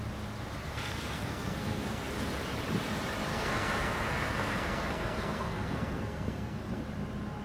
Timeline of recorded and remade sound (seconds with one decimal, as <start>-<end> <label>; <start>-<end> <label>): 0.0-0.6 recorded; 0.6-2.1 remade; 2.1-3.3 recorded; 3.3-6.8 remade; 6.8-7.4 recorded